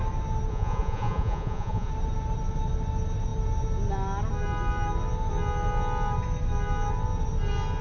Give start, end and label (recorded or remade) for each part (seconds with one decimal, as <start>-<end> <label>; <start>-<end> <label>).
0.0-0.5 recorded; 0.5-1.9 remade; 1.9-7.8 recorded

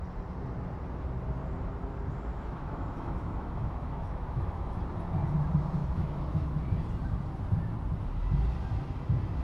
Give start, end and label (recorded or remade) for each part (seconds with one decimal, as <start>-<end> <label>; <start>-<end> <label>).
0.0-2.3 recorded; 2.3-4.8 remade; 4.8-5.8 recorded; 5.8-6.6 remade; 6.6-9.4 recorded

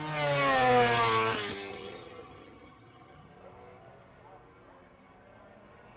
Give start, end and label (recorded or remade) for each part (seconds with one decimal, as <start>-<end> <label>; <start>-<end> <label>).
0.0-1.7 recorded; 1.7-3.3 remade; 3.3-6.0 recorded

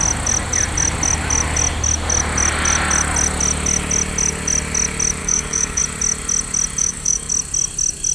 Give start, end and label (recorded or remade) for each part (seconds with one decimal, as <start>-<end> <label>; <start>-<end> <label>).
0.0-5.2 recorded; 5.2-5.8 remade; 5.8-6.8 recorded; 6.8-7.3 remade; 7.3-8.1 recorded

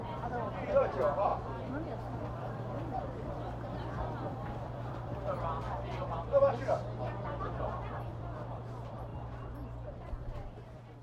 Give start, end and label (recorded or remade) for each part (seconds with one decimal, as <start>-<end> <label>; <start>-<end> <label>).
0.0-9.1 remade; 9.1-9.9 recorded; 9.9-11.0 remade

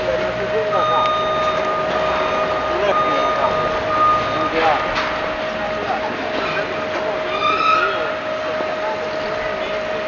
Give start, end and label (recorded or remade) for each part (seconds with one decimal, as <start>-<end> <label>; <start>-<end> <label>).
0.0-10.1 recorded

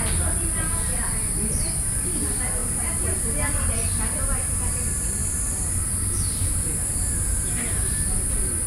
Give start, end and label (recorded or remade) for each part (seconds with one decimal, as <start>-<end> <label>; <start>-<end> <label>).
0.0-2.6 recorded; 2.6-3.3 remade; 3.3-8.7 recorded